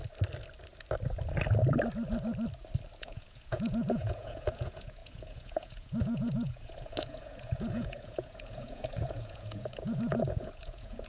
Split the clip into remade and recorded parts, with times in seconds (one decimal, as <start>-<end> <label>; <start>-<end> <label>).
0.0-3.0 recorded; 3.0-11.1 remade